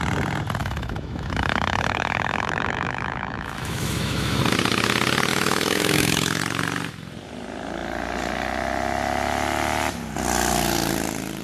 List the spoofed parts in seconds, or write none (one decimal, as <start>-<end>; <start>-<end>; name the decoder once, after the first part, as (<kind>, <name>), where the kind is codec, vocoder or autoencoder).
0.6-4.4 (autoencoder, DAC-VAE); 5.3-6.4